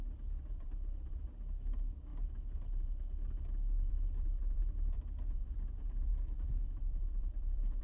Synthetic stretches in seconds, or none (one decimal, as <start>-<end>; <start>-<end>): 0.0-2.1; 3.9-7.8